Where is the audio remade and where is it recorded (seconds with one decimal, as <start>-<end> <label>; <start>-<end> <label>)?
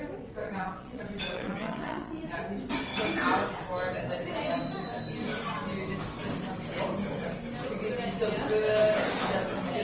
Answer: 0.0-0.4 recorded; 0.4-2.4 remade; 2.4-9.8 recorded